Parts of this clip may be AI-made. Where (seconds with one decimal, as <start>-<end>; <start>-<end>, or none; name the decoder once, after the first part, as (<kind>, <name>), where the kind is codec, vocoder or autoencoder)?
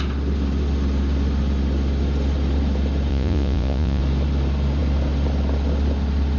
3.1-4.0 (vocoder, Vocos)